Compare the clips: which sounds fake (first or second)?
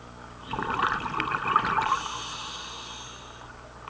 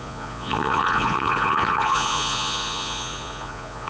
second